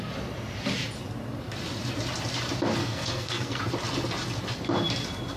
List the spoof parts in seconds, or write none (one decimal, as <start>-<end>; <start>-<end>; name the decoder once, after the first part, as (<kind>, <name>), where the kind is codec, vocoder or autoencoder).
2.8-3.6 (codec, SNAC)